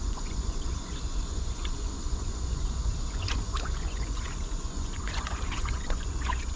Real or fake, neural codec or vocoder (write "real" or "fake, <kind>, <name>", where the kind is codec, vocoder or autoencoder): fake, vocoder, Vocos